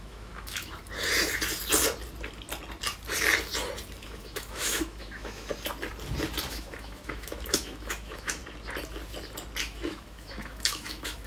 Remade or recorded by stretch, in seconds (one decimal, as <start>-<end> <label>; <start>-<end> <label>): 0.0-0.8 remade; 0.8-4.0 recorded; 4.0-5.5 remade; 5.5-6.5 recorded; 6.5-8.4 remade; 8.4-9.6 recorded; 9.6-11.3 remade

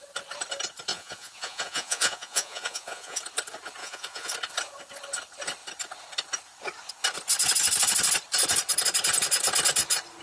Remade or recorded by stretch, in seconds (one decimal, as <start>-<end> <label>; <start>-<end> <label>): 0.0-0.9 recorded; 0.9-3.2 remade; 3.2-3.8 recorded; 3.8-4.3 remade; 4.3-10.2 recorded

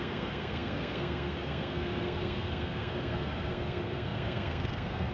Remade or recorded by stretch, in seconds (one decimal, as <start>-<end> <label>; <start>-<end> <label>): 0.0-5.1 remade